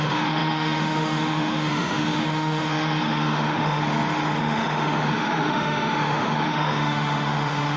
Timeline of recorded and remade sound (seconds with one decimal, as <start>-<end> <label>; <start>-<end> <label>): 0.0-3.8 remade; 3.8-4.4 recorded; 4.4-7.8 remade